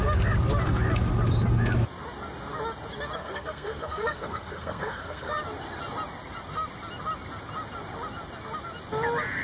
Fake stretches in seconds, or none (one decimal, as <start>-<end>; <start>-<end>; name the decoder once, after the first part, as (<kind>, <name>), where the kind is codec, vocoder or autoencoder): 3.2-5.3 (codec, SNAC)